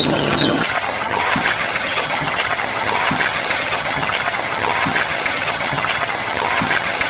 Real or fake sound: fake